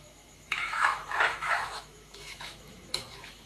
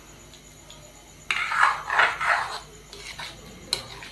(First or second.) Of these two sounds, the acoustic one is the second